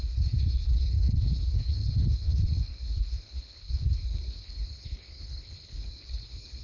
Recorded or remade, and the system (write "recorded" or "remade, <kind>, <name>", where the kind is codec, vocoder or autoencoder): remade, codec, HILCodec